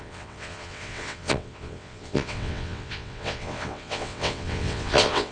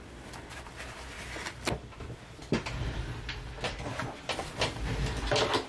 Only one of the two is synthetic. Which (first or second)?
first